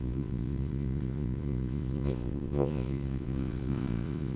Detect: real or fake fake